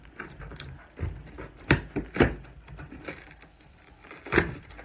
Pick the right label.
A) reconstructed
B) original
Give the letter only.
B